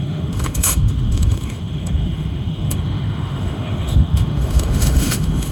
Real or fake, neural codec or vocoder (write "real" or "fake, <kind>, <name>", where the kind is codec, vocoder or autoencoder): fake, autoencoder, DAC-VAE